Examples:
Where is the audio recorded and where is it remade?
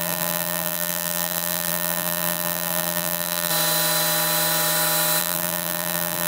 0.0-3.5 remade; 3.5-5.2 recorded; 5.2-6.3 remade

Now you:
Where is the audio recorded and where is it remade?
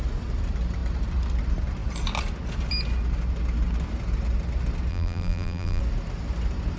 0.0-4.9 recorded; 4.9-5.8 remade; 5.8-6.8 recorded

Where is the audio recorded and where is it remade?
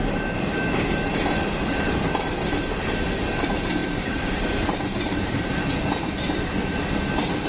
0.0-3.4 remade; 3.4-3.8 recorded; 3.8-5.5 remade; 5.5-7.5 recorded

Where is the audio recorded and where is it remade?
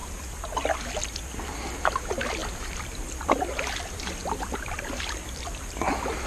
0.0-2.4 recorded; 2.4-3.3 remade; 3.3-4.2 recorded; 4.2-6.3 remade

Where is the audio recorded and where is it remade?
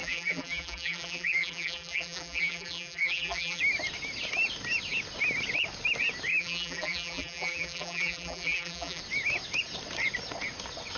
0.0-3.6 remade; 3.6-6.3 recorded; 6.3-9.0 remade; 9.0-11.0 recorded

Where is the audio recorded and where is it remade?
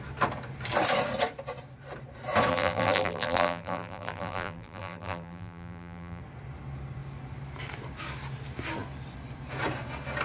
0.0-2.5 recorded; 2.5-6.2 remade; 6.2-10.2 recorded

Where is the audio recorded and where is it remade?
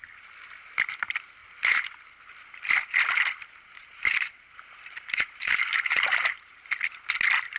0.0-3.8 recorded; 3.8-6.5 remade; 6.5-7.6 recorded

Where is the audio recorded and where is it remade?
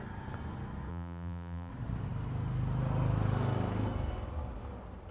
0.0-0.9 recorded; 0.9-1.7 remade; 1.7-5.1 recorded